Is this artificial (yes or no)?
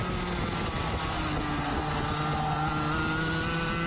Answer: no